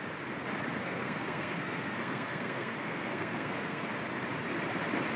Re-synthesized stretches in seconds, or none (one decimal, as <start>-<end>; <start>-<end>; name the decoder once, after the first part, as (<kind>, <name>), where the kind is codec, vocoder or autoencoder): 0.8-3.9 (codec, SNAC)